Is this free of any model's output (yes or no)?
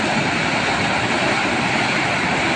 yes